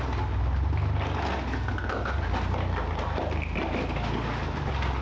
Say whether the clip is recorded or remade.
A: recorded